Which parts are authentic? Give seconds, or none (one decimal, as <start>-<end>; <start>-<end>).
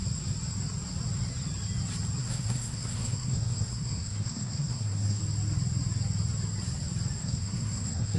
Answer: 0.0-2.2; 5.2-7.2